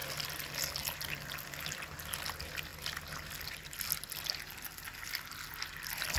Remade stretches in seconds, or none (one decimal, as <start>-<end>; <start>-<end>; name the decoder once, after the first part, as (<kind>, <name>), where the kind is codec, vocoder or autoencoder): none